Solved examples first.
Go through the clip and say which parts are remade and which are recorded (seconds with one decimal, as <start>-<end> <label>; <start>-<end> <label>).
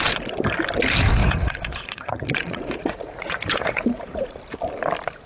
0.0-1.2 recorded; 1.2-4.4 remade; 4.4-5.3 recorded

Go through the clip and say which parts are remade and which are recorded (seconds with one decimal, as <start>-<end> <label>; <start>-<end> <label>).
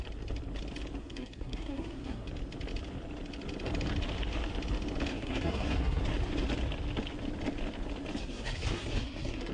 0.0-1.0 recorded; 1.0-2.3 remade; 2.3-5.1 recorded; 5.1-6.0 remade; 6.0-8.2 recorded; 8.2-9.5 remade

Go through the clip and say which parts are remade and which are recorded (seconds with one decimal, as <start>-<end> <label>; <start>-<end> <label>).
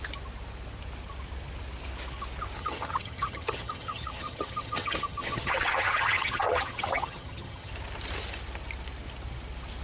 0.0-2.6 recorded; 2.6-7.7 remade; 7.7-9.8 recorded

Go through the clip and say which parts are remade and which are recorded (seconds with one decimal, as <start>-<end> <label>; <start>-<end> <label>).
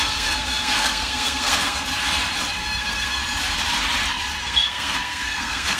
0.0-1.9 remade; 1.9-2.6 recorded; 2.6-3.2 remade; 3.2-4.4 recorded; 4.4-5.8 remade